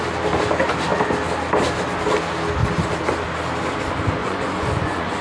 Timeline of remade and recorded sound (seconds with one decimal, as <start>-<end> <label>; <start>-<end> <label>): 0.0-4.2 recorded; 4.2-5.2 remade